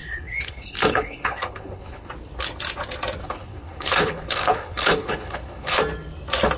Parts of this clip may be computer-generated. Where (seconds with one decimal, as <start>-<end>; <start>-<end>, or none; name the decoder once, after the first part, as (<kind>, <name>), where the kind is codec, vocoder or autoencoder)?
0.0-2.1 (codec, HILCodec); 3.2-5.8